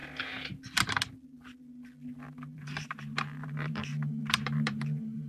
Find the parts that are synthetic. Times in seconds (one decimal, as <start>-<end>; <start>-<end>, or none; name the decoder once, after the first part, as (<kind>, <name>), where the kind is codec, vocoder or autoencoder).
2.5-5.3 (vocoder, BigVGAN v2)